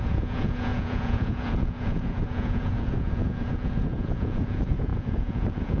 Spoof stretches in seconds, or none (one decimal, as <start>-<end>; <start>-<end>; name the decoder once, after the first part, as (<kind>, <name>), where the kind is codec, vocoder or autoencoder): 0.0-5.8 (vocoder, Vocos)